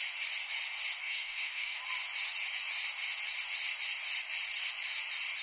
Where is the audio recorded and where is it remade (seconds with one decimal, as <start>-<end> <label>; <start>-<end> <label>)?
0.0-1.0 recorded; 1.0-1.8 remade; 1.8-5.4 recorded